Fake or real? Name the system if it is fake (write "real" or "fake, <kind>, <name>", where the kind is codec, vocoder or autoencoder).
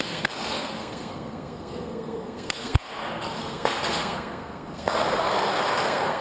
fake, codec, SNAC